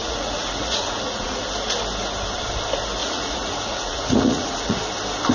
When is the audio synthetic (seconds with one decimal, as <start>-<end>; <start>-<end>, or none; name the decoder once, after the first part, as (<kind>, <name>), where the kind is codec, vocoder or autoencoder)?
0.0-1.4 (vocoder, Vocos); 3.0-4.8